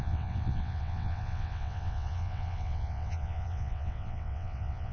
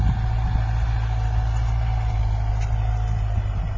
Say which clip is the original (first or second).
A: second